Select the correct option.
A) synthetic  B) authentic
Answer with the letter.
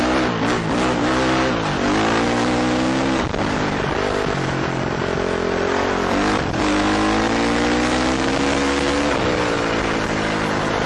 B